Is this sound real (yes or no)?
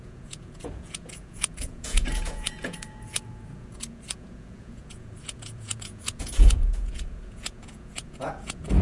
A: no